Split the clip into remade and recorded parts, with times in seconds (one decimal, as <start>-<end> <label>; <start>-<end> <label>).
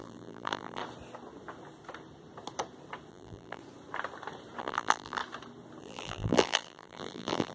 0.0-0.8 remade; 0.8-3.1 recorded; 3.1-3.6 remade; 3.6-4.6 recorded; 4.6-5.2 remade; 5.2-5.8 recorded; 5.8-7.5 remade